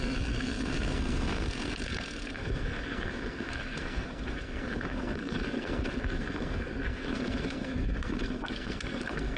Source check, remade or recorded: remade